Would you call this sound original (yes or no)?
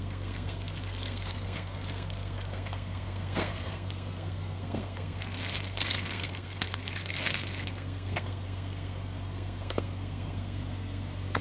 no